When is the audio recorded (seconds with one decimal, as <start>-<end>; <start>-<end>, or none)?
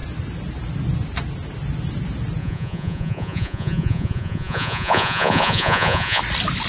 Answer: 0.0-2.4; 6.2-6.7